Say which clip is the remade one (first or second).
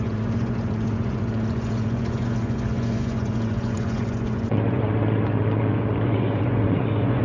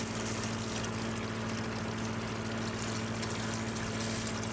first